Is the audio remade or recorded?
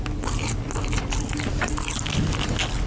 recorded